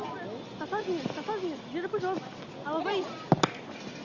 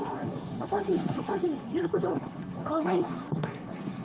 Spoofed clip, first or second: second